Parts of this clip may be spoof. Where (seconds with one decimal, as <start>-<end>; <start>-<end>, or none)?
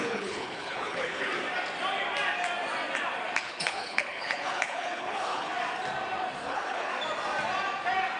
0.0-1.3; 3.4-5.5; 6.4-6.9